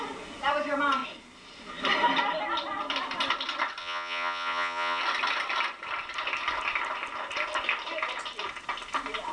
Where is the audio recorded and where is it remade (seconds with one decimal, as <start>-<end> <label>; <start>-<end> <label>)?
0.0-3.8 recorded; 3.8-5.0 remade; 5.0-9.3 recorded